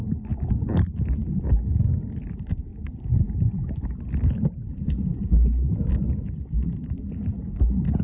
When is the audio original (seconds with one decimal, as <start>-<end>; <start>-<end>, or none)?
0.0-8.0